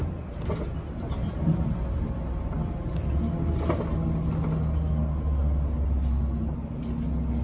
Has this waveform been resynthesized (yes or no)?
no